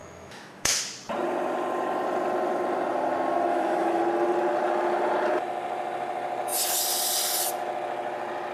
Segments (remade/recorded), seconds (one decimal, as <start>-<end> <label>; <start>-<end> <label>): 0.0-0.8 remade; 0.8-3.5 recorded; 3.5-4.0 remade; 4.0-8.5 recorded